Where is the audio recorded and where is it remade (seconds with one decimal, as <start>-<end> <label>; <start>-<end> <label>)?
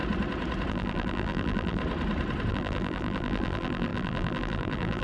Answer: 0.0-0.7 recorded; 0.7-1.8 remade; 1.8-2.5 recorded; 2.5-5.0 remade